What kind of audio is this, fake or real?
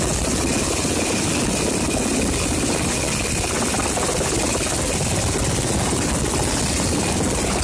real